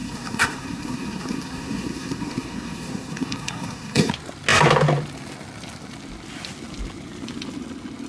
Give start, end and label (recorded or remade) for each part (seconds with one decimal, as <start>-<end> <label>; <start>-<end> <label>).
0.0-4.1 remade; 4.1-8.1 recorded

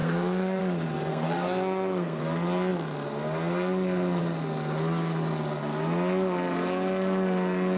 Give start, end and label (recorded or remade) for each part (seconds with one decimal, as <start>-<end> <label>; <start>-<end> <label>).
0.0-0.6 remade; 0.6-1.1 recorded; 1.1-2.2 remade; 2.2-7.8 recorded

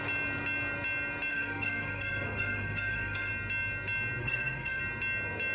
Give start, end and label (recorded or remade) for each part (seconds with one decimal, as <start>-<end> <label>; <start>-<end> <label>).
0.0-1.3 recorded; 1.3-3.3 remade; 3.3-4.2 recorded; 4.2-4.8 remade; 4.8-5.5 recorded

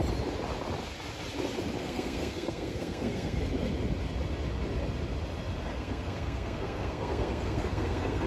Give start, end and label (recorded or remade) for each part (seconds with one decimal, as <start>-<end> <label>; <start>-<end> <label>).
0.0-1.8 recorded; 1.8-3.4 remade; 3.4-5.7 recorded; 5.7-8.3 remade

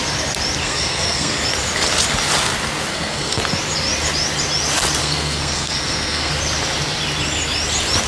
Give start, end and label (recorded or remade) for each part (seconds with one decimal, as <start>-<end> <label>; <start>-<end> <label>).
0.0-0.6 recorded; 0.6-1.4 remade; 1.4-2.9 recorded; 2.9-3.4 remade; 3.4-5.0 recorded; 5.0-6.3 remade; 6.3-8.1 recorded

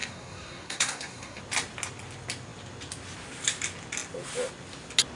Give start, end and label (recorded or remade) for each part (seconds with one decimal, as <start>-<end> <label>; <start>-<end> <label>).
0.0-1.4 remade; 1.4-5.2 recorded